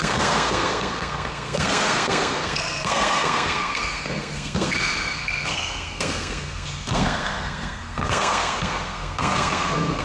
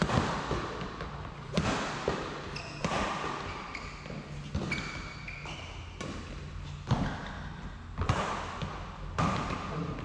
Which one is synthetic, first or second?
first